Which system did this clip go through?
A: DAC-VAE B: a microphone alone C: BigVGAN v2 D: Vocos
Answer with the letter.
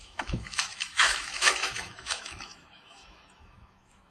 A